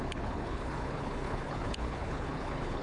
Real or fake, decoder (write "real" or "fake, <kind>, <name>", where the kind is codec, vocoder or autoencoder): fake, codec, HILCodec